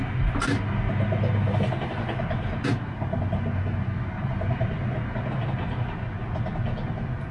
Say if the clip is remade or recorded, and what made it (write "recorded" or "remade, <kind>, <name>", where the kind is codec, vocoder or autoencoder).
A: recorded